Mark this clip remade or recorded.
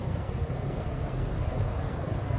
remade